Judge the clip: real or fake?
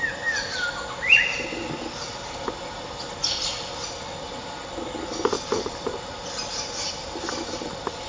real